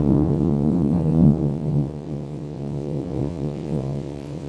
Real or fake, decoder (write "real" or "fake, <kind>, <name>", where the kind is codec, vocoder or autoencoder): fake, vocoder, WaveNeXt